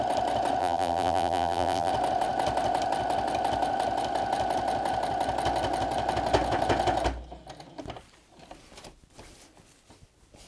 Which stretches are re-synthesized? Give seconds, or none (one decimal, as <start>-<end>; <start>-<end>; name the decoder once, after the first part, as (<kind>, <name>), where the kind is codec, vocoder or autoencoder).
0.6-1.9 (vocoder, BigVGAN v2)